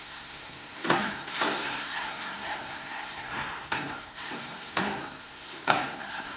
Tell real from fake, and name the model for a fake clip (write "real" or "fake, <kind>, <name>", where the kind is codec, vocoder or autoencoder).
fake, codec, SNAC